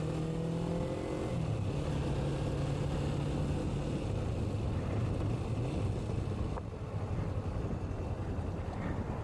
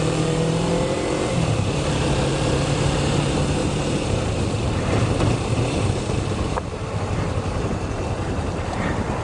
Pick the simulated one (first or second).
second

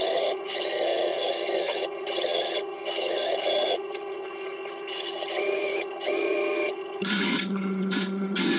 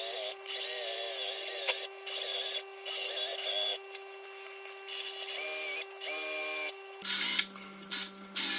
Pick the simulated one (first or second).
first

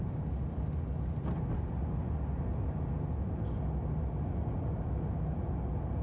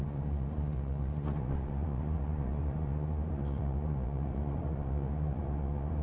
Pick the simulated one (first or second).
second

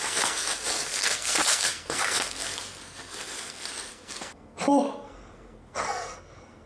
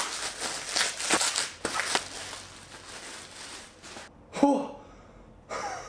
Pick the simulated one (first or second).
first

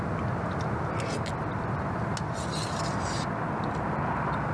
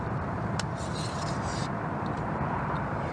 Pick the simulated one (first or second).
second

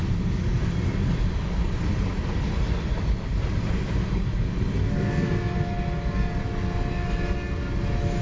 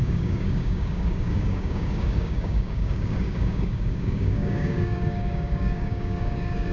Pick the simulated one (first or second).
second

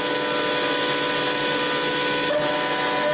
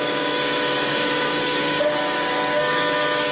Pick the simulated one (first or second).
second